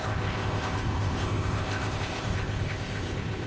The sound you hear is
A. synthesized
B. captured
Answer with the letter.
A